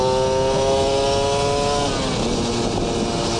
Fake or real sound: real